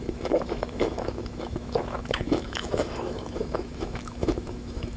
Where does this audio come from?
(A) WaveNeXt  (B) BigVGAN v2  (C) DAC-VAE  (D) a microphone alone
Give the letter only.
C